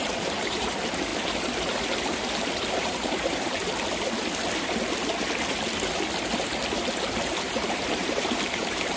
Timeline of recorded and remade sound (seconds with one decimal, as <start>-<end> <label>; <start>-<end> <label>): 0.0-1.1 remade; 1.1-2.7 recorded; 2.7-3.6 remade; 3.6-7.2 recorded; 7.2-9.0 remade